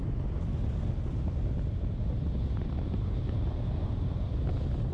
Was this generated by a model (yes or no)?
no